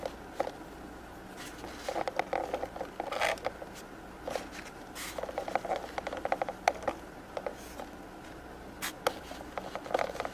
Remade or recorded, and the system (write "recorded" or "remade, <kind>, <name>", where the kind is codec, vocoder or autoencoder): recorded